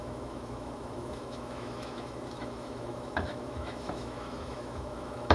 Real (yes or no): no